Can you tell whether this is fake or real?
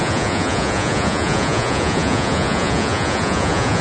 fake